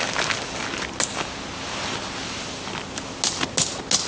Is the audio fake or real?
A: real